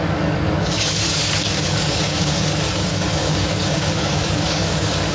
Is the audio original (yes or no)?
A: no